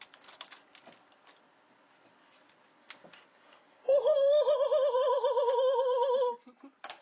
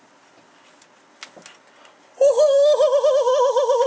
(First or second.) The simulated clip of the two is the first